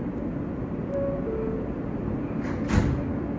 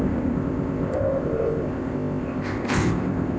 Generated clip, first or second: second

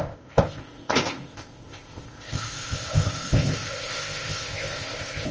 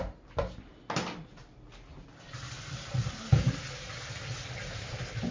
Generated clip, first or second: first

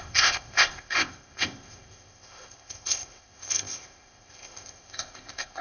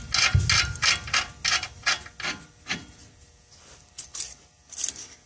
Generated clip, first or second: first